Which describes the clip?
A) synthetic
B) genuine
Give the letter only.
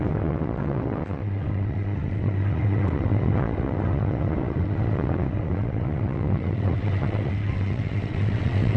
A